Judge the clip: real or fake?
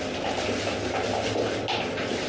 real